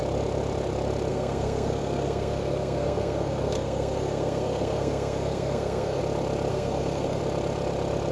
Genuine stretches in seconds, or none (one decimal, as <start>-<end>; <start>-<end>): 0.0-1.1; 6.0-6.5; 7.2-8.1